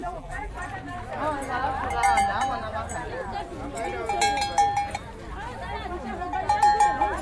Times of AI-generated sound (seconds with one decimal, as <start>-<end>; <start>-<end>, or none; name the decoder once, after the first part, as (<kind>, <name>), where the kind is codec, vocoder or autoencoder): 0.0-0.5 (vocoder, BigVGAN v2)